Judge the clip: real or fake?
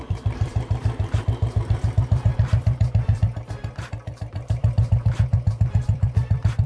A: fake